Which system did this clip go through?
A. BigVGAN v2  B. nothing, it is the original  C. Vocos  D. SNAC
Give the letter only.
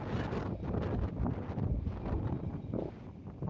B